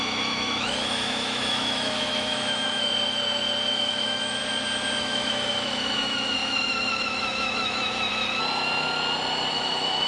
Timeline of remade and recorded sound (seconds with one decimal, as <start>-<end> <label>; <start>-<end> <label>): 0.0-2.9 remade; 2.9-3.7 recorded; 3.7-4.4 remade; 4.4-5.0 recorded; 5.0-8.1 remade; 8.1-9.5 recorded; 9.5-10.1 remade